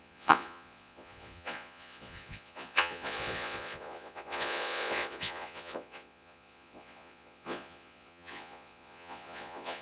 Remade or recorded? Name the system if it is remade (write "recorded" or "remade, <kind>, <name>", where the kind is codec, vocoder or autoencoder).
remade, vocoder, Vocos